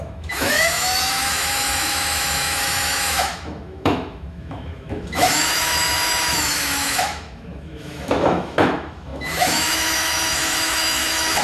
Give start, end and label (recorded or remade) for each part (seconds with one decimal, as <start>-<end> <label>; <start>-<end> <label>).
0.0-11.4 remade